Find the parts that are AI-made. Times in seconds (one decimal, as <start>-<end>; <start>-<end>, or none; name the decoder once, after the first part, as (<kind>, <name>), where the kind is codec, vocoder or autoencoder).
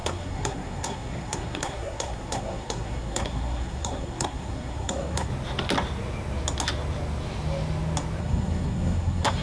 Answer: 0.0-5.3 (codec, SNAC); 8.2-9.4